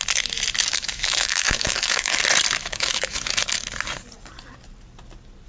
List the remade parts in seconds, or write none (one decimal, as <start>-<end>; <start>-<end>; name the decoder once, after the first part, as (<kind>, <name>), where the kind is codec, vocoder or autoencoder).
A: 0.7-2.2 (autoencoder, DAC-VAE); 2.6-3.4